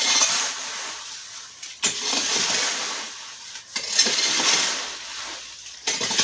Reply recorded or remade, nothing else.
recorded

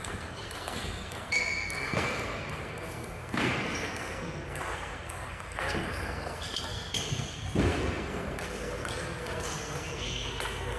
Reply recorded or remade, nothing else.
remade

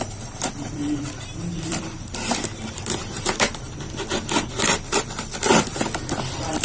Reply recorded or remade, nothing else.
remade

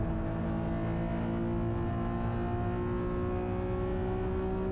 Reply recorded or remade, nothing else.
recorded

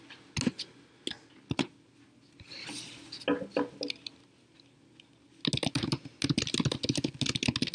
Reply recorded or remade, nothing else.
recorded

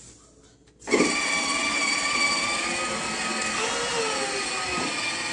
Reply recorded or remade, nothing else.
recorded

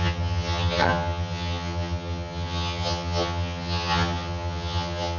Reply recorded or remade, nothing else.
remade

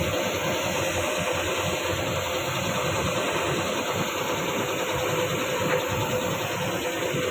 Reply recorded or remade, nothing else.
recorded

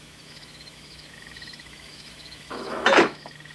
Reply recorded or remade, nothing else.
remade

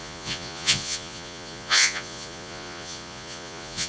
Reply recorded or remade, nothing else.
remade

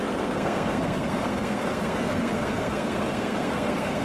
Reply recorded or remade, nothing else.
remade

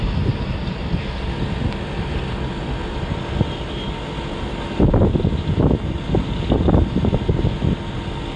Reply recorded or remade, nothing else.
recorded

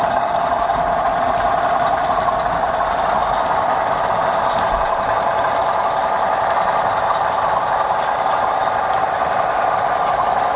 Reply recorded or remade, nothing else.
recorded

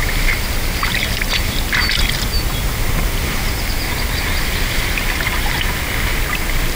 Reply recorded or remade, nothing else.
recorded